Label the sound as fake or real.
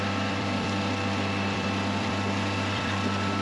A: fake